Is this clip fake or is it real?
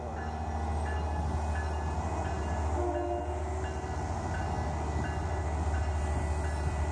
real